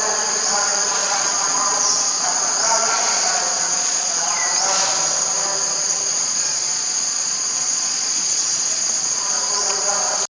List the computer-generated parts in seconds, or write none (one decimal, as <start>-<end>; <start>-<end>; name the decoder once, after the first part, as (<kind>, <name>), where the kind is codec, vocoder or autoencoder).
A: 0.7-4.5 (vocoder, Vocos); 6.1-9.9